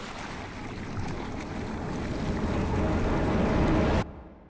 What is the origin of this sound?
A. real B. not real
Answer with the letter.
A